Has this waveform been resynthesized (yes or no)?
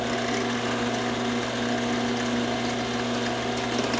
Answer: no